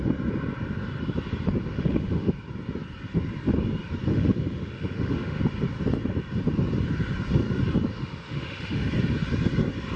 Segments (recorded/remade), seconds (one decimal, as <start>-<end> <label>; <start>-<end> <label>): 0.0-1.7 recorded; 1.7-2.3 remade; 2.3-4.1 recorded; 4.1-5.4 remade; 5.4-7.9 recorded; 7.9-8.9 remade; 8.9-10.0 recorded

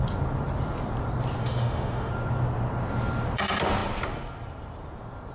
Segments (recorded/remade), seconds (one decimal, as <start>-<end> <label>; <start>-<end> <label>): 0.0-1.4 recorded; 1.4-2.1 remade; 2.1-5.3 recorded

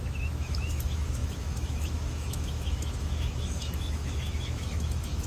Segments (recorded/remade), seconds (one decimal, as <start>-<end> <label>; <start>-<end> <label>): 0.0-5.3 remade

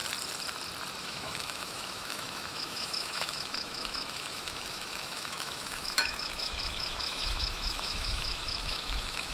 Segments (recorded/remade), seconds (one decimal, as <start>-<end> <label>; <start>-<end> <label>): 0.0-1.0 recorded; 1.0-9.3 remade